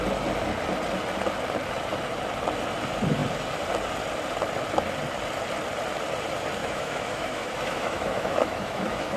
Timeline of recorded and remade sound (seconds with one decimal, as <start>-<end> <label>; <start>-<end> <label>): 0.0-6.6 recorded; 6.6-9.2 remade